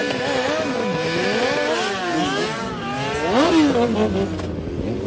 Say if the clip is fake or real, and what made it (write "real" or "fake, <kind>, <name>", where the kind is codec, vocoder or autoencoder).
real